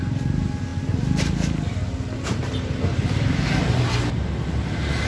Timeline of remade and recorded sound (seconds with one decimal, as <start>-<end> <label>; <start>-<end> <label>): 0.0-5.1 recorded

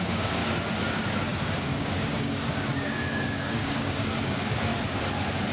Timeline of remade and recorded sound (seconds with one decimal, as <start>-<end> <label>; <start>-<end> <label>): 0.0-0.4 remade; 0.4-0.9 recorded; 0.9-4.7 remade; 4.7-5.5 recorded

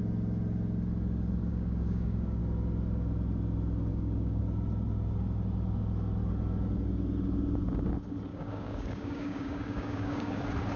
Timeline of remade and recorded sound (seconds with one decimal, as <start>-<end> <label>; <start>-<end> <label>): 0.0-1.5 recorded; 1.5-2.4 remade; 2.4-3.9 recorded; 3.9-4.4 remade; 4.4-8.3 recorded; 8.3-10.4 remade; 10.4-10.8 recorded

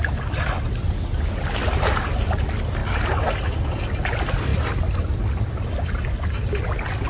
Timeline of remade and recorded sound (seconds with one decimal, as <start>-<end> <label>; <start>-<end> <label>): 0.0-7.1 recorded

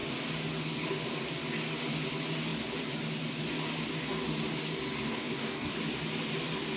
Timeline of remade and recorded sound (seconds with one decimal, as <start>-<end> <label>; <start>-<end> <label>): 0.0-5.1 recorded; 5.1-5.7 remade; 5.7-6.8 recorded

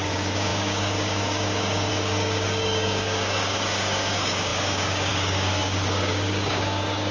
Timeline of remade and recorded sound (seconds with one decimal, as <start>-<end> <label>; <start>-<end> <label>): 0.0-7.1 remade

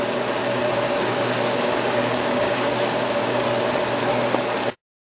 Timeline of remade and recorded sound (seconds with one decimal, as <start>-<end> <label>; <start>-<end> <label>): 0.0-0.5 recorded; 0.5-3.6 remade; 3.6-5.2 recorded

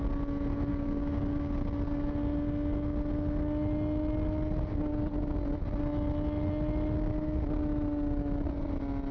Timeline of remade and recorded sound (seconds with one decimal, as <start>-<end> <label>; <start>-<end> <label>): 0.0-0.7 recorded; 0.7-1.5 remade; 1.5-9.1 recorded